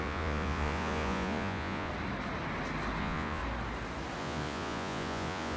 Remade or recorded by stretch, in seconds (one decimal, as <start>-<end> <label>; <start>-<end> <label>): 0.0-1.9 remade; 1.9-3.0 recorded; 3.0-3.4 remade; 3.4-4.2 recorded; 4.2-5.6 remade